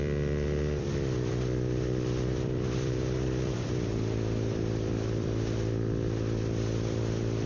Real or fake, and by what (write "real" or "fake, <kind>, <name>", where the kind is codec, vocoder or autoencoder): fake, vocoder, BigVGAN v2